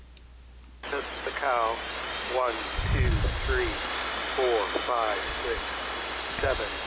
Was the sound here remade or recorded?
recorded